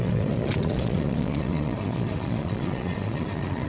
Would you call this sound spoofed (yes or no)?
yes